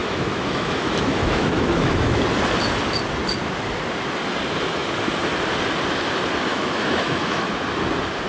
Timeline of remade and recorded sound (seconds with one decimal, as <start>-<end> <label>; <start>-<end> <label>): 0.0-2.2 remade; 2.2-6.5 recorded; 6.5-7.6 remade; 7.6-8.3 recorded

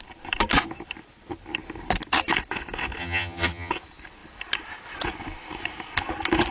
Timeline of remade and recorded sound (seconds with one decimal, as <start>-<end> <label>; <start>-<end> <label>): 0.0-3.0 recorded; 3.0-3.7 remade; 3.7-6.5 recorded

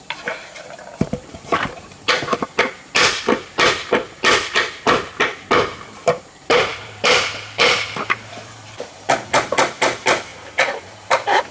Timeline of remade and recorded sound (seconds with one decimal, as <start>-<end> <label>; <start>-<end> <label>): 0.0-3.0 remade; 3.0-4.5 recorded; 4.5-11.5 remade

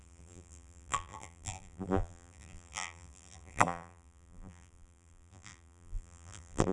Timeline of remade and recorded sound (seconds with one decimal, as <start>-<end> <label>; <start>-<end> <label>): 0.0-6.7 remade

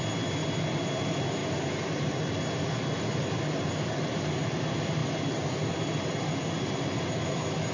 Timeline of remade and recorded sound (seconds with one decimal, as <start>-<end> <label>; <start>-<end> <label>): 0.0-7.7 recorded

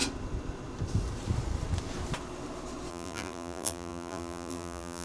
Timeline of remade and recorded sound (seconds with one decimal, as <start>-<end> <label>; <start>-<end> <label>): 0.0-2.9 recorded; 2.9-5.0 remade

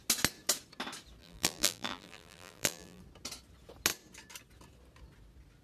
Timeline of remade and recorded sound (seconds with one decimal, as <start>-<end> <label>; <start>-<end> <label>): 0.0-1.2 recorded; 1.2-3.0 remade; 3.0-5.6 recorded